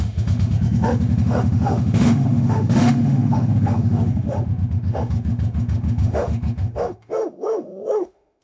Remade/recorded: remade